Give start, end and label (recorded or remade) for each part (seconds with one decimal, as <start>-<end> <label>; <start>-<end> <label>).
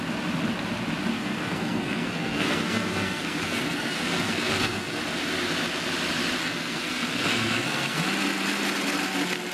0.0-1.1 recorded; 1.1-5.0 remade; 5.0-6.4 recorded; 6.4-8.0 remade; 8.0-9.5 recorded